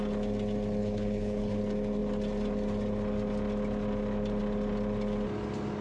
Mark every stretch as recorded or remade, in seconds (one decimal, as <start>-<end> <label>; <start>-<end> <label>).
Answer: 0.0-0.8 recorded; 0.8-1.6 remade; 1.6-5.8 recorded